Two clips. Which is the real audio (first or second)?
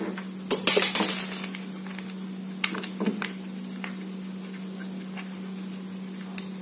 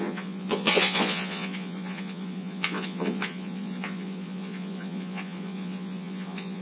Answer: first